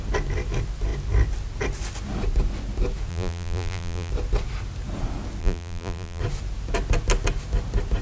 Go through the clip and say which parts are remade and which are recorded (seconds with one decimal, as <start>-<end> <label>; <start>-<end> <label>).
0.0-3.1 recorded; 3.1-4.1 remade; 4.1-5.4 recorded; 5.4-6.2 remade; 6.2-8.0 recorded